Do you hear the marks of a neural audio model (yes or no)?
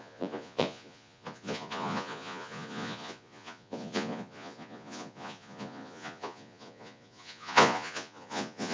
yes